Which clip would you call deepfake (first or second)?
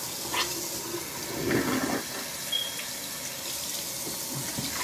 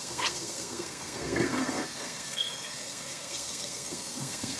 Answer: second